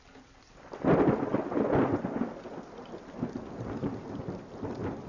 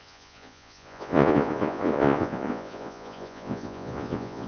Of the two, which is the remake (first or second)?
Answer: second